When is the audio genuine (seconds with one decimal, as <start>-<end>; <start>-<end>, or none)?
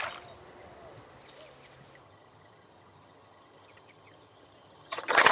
0.0-2.0